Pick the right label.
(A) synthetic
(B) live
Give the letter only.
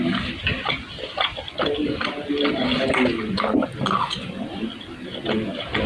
B